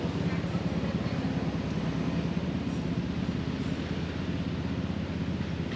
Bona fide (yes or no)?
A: yes